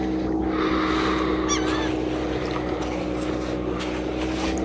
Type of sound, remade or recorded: recorded